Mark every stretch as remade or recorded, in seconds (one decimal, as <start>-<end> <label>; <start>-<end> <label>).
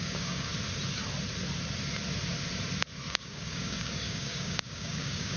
0.0-0.5 remade; 0.5-3.1 recorded; 3.1-5.4 remade